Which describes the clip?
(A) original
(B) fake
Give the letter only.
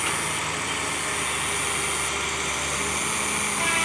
A